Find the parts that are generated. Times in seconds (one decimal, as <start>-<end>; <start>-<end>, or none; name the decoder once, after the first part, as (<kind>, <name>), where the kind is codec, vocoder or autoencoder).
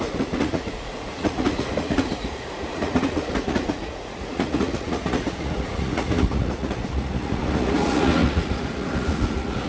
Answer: 0.0-9.7 (vocoder, Vocos)